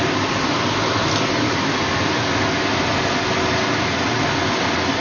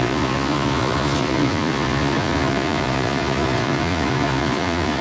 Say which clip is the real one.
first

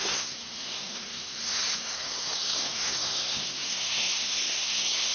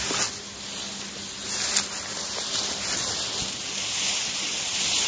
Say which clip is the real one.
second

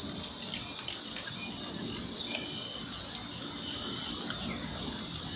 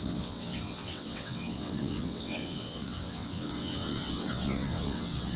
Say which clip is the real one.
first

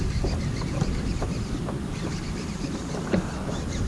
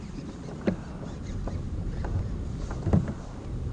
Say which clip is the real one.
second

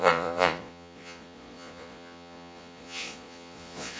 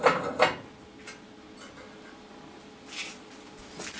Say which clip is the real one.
second